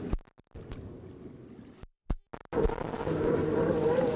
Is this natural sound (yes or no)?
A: yes